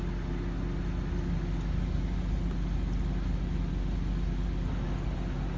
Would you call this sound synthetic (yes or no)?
no